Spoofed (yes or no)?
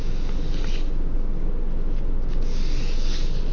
no